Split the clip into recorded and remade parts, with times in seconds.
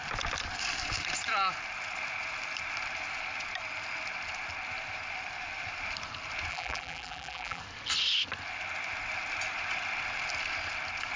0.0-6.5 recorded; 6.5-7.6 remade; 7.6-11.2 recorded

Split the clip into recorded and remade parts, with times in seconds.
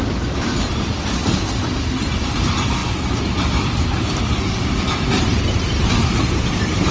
0.0-6.9 remade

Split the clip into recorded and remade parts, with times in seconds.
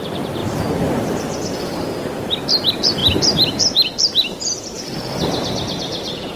0.0-6.4 remade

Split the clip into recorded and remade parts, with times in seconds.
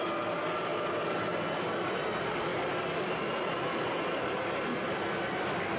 0.0-0.7 recorded; 0.7-1.9 remade; 1.9-2.5 recorded; 2.5-4.0 remade; 4.0-5.8 recorded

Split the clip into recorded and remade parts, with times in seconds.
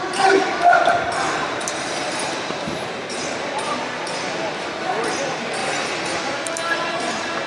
0.0-1.4 recorded; 1.4-3.6 remade; 3.6-7.5 recorded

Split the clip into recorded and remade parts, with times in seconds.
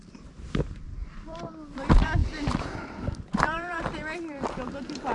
0.0-1.0 recorded; 1.0-1.5 remade; 1.5-2.2 recorded; 2.2-4.4 remade; 4.4-5.1 recorded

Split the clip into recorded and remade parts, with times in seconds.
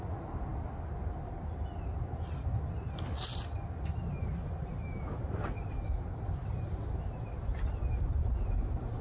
0.0-4.7 recorded; 4.7-8.3 remade; 8.3-9.0 recorded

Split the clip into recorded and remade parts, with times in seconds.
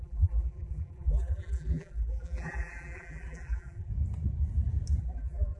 0.0-3.9 remade; 3.9-5.0 recorded; 5.0-5.6 remade